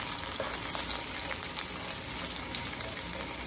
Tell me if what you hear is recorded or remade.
recorded